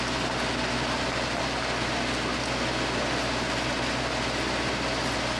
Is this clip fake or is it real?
real